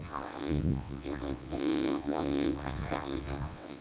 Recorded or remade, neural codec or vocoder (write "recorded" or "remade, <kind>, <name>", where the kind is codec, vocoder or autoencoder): remade, vocoder, WaveNeXt